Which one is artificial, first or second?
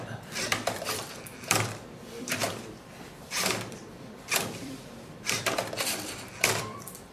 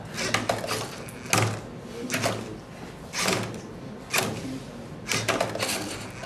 first